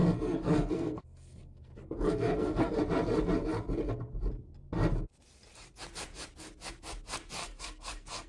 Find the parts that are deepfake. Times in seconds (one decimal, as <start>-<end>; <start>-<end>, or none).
0.0-2.8; 7.4-8.3